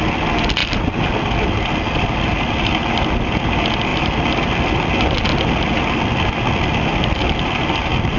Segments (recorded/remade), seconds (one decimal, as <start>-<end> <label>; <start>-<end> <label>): 0.0-8.2 recorded